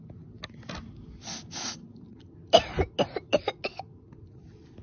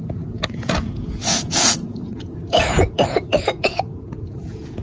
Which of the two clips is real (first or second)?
first